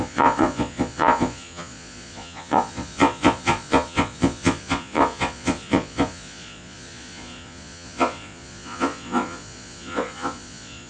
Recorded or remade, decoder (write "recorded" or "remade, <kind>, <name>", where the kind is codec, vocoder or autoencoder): remade, vocoder, Vocos